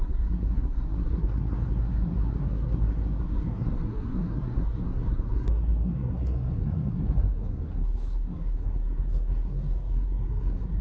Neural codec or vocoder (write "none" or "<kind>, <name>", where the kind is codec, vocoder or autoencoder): codec, SNAC